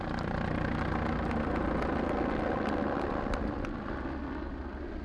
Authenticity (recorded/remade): recorded